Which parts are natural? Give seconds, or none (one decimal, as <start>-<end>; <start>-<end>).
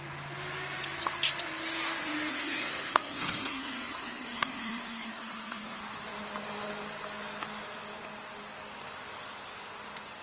0.0-2.3; 5.8-10.2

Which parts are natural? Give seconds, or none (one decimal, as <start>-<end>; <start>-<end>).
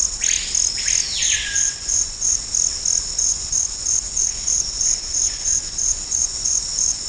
0.0-1.2; 2.4-3.2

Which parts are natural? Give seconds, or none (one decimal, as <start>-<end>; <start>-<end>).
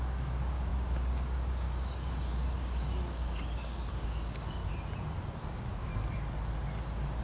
4.6-5.4; 5.9-7.2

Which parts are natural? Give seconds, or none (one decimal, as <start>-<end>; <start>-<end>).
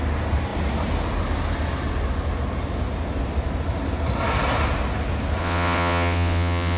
0.0-5.4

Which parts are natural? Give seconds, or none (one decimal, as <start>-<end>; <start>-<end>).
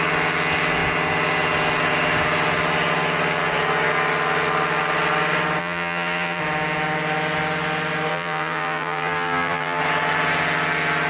0.0-5.6; 6.4-8.1; 9.8-11.1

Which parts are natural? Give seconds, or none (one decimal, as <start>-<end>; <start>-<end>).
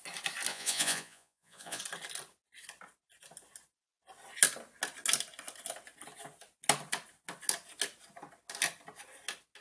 0.0-0.5; 1.8-9.6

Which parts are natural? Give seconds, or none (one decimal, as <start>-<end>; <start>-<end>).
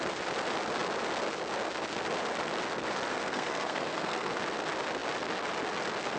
0.0-3.1; 4.3-6.2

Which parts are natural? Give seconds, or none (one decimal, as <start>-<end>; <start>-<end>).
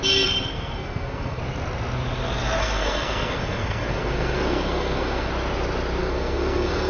0.0-0.5; 1.4-2.6; 5.3-6.0